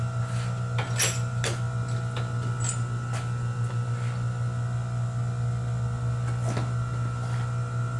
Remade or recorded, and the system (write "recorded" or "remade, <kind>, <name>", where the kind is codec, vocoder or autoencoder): recorded